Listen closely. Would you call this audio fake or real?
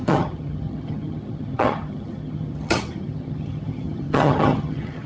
fake